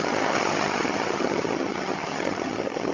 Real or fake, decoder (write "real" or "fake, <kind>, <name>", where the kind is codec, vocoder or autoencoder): fake, vocoder, HiFi-GAN